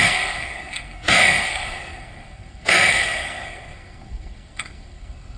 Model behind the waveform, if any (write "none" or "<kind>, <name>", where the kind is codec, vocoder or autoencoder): codec, SNAC